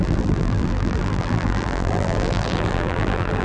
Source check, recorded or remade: remade